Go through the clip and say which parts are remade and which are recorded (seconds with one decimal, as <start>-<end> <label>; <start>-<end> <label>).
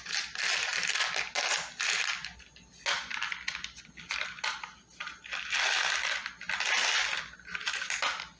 0.0-8.4 recorded